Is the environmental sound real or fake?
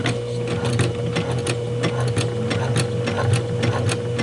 real